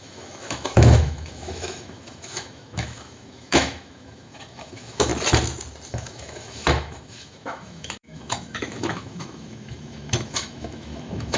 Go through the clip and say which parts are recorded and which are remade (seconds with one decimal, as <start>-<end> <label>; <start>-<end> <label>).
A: 0.0-5.1 remade; 5.1-5.9 recorded; 5.9-11.4 remade